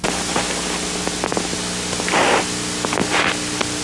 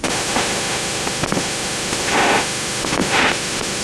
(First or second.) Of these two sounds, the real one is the first